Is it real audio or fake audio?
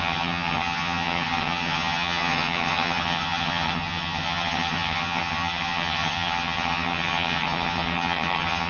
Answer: fake